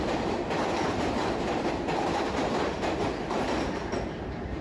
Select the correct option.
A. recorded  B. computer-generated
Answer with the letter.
A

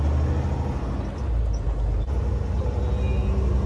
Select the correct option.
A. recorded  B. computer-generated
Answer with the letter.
A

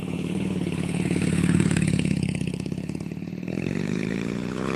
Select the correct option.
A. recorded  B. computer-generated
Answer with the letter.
B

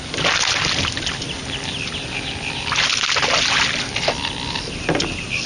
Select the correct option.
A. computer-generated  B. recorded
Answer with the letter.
B